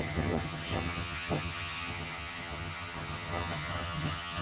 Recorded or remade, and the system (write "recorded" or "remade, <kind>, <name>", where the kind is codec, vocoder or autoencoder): remade, vocoder, HiFi-GAN